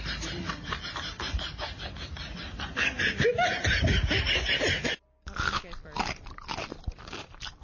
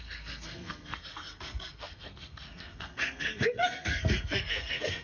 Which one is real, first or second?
first